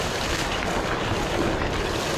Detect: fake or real real